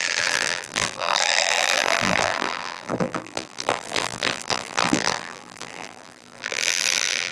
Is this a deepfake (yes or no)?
yes